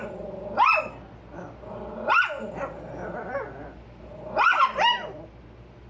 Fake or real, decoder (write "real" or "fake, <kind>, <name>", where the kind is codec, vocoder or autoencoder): real